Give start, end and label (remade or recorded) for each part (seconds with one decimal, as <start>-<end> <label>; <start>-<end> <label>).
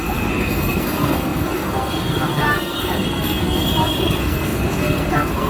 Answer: 0.0-5.5 remade